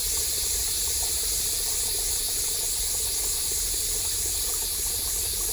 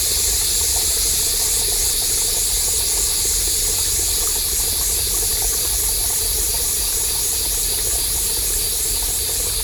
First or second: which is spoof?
first